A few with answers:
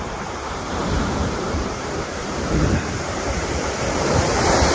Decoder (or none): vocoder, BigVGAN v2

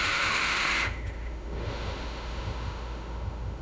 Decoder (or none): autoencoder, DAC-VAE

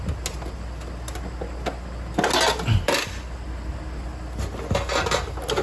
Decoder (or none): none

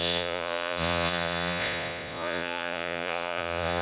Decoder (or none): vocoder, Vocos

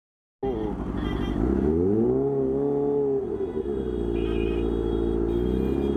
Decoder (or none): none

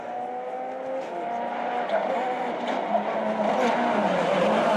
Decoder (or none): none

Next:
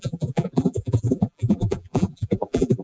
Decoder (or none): vocoder, BigVGAN v2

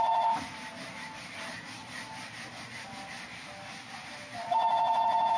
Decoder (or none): none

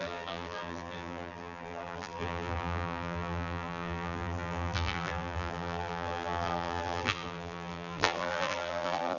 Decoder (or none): vocoder, BigVGAN v2